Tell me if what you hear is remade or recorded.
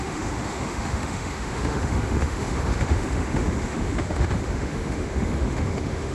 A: remade